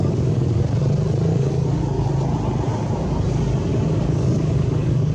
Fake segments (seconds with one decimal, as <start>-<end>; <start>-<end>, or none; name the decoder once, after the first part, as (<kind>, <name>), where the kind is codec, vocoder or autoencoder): 0.0-0.7 (codec, DAC); 1.3-2.1; 3.7-5.1